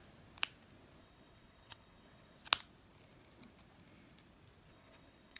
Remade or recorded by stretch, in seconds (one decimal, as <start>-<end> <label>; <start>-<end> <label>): 0.0-1.0 recorded; 1.0-2.4 remade; 2.4-4.7 recorded; 4.7-5.4 remade